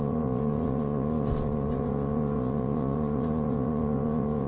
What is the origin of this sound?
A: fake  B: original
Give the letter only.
A